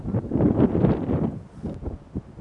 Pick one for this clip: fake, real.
real